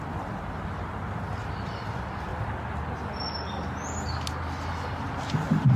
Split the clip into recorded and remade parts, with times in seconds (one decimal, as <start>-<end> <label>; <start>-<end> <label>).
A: 0.0-2.3 remade; 2.3-5.1 recorded; 5.1-5.8 remade